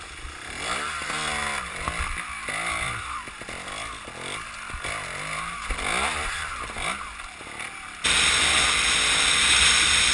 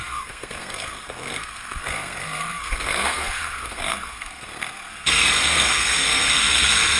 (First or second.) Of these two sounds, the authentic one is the first